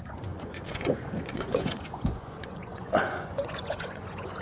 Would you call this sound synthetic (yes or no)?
yes